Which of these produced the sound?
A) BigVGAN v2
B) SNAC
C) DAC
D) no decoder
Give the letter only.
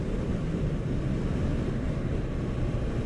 D